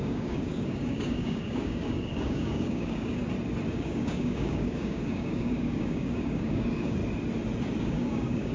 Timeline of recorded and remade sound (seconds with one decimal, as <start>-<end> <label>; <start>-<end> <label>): 0.0-3.2 remade; 3.2-3.7 recorded; 3.7-7.0 remade; 7.0-7.8 recorded; 7.8-8.5 remade